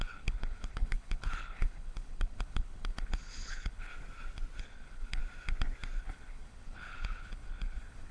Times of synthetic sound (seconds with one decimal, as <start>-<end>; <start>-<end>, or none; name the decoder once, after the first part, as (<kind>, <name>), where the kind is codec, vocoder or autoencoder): 0.0-3.9 (codec, HILCodec); 4.6-5.2; 6.0-8.1

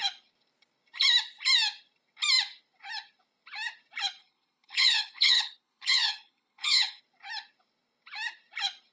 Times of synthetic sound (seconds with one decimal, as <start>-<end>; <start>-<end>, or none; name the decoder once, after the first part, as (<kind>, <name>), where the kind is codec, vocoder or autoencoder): 4.2-7.0 (codec, HILCodec)

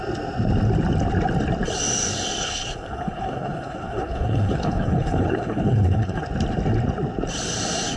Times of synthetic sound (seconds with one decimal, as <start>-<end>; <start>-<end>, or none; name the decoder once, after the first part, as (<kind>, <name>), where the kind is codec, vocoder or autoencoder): 2.4-6.2 (codec, HILCodec)